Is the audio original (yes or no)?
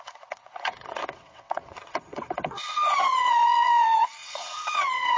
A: no